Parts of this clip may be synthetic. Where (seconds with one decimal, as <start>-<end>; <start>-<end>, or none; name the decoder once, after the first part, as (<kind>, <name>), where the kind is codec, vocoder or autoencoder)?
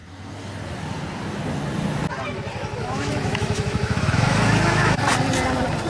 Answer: 2.8-5.0 (autoencoder, DAC-VAE)